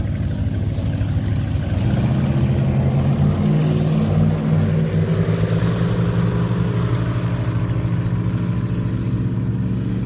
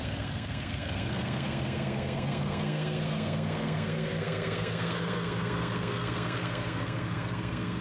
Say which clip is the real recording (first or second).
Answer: first